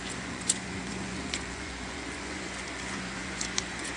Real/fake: fake